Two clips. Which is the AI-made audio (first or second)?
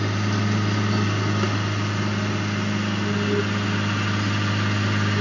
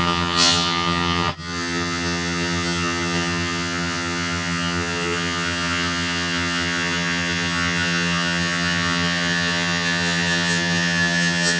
second